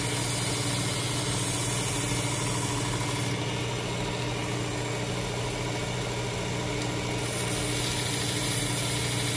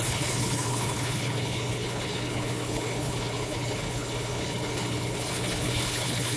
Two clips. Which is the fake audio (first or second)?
second